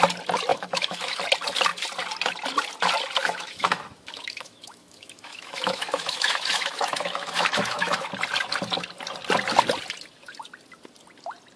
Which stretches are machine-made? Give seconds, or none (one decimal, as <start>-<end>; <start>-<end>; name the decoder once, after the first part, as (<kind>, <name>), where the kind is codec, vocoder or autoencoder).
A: 0.5-1.2 (autoencoder, DAC-VAE); 3.2-8.1